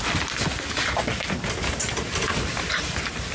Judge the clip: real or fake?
real